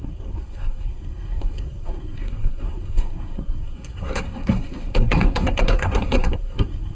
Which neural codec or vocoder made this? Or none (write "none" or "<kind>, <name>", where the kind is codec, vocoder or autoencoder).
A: codec, SNAC